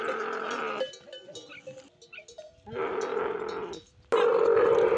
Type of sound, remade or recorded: recorded